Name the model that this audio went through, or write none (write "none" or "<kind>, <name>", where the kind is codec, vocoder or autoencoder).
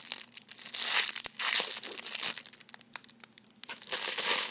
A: none